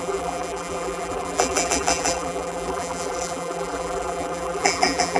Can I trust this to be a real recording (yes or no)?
no